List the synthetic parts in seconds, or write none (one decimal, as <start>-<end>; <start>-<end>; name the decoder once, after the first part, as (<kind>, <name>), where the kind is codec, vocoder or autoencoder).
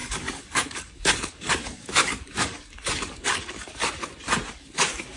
0.0-3.8 (codec, DAC); 4.5-5.2